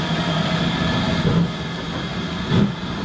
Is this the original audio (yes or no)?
yes